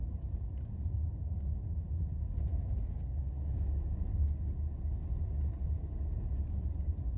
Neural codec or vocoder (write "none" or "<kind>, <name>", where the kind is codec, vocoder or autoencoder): none